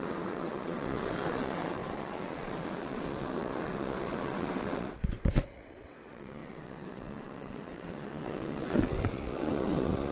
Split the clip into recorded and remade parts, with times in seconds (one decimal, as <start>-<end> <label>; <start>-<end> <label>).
0.0-10.1 remade